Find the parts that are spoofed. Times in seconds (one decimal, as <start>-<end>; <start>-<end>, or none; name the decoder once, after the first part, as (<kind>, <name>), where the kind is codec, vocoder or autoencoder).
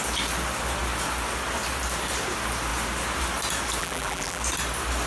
3.8-4.4 (vocoder, BigVGAN v2)